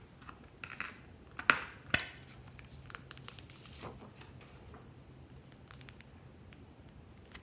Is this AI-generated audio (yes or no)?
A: no